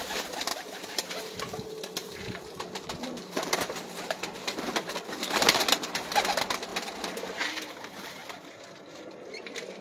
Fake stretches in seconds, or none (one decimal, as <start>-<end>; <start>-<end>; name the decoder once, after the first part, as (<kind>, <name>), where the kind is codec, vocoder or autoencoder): 0.5-1.1 (vocoder, BigVGAN v2); 2.0-6.1